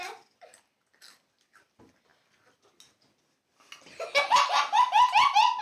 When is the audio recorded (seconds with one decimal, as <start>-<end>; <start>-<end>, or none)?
0.0-5.6